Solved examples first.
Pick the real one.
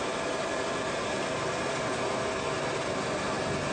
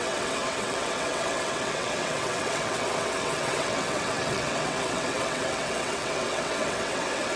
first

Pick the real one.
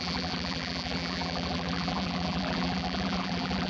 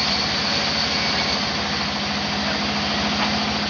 second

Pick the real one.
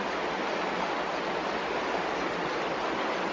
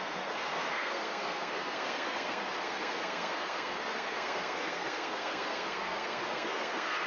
first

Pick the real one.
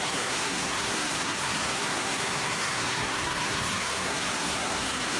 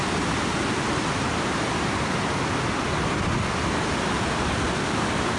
second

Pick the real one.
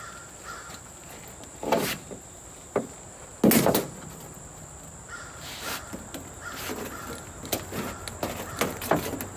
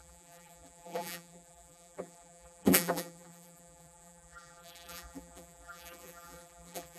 first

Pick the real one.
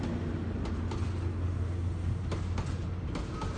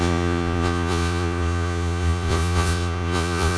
first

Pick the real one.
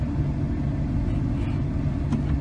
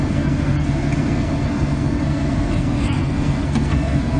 first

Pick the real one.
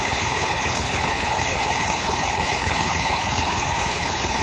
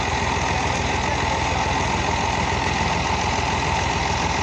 second